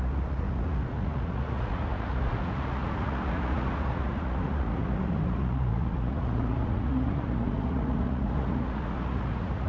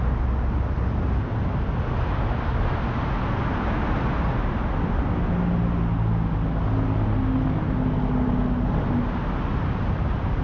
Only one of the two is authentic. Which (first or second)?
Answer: second